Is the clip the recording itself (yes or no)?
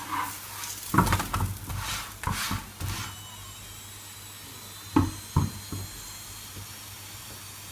yes